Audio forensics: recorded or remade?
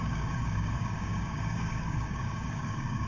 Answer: remade